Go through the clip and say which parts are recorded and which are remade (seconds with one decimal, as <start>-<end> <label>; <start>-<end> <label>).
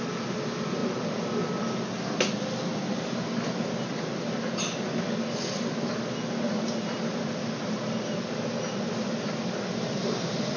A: 0.0-10.6 recorded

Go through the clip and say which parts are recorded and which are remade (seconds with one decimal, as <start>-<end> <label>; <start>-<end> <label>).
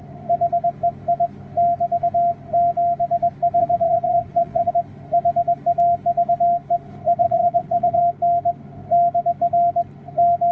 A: 0.0-3.6 recorded; 3.6-4.7 remade; 4.7-7.2 recorded; 7.2-8.0 remade; 8.0-10.5 recorded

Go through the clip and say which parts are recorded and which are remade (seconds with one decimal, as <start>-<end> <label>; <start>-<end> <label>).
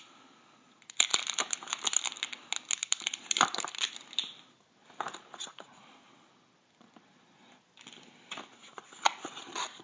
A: 0.0-1.1 recorded; 1.1-2.0 remade; 2.0-2.8 recorded; 2.8-3.9 remade; 3.9-9.8 recorded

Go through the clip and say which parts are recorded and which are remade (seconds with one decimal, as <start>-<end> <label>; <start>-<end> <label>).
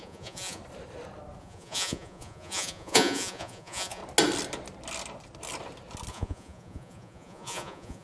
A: 0.0-0.6 remade; 0.6-1.4 recorded; 1.4-4.0 remade; 4.0-6.1 recorded; 6.1-8.0 remade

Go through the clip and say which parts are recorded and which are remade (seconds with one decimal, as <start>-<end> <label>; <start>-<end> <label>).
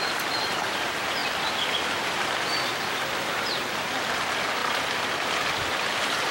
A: 0.0-6.3 recorded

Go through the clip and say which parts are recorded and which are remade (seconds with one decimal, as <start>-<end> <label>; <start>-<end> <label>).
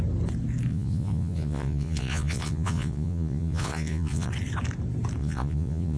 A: 0.0-0.7 recorded; 0.7-4.3 remade; 4.3-5.2 recorded; 5.2-6.0 remade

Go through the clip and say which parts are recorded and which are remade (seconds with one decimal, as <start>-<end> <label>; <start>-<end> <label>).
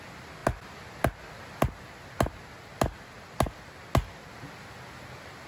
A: 0.0-5.5 recorded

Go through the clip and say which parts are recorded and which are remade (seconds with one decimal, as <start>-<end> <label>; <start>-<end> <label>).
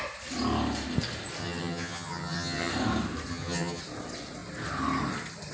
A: 0.0-1.4 recorded; 1.4-2.7 remade; 2.7-3.3 recorded; 3.3-3.8 remade; 3.8-5.5 recorded